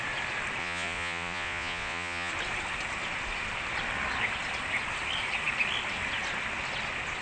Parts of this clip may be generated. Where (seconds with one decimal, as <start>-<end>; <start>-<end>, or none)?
0.6-2.3